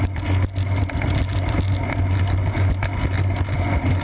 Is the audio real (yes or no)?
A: yes